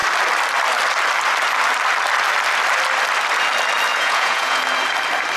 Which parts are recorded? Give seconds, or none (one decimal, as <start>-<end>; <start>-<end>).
0.0-3.9; 4.6-5.4